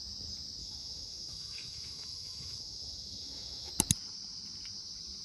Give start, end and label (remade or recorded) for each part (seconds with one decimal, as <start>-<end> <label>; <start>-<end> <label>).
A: 0.0-0.6 recorded; 0.6-3.7 remade; 3.7-5.2 recorded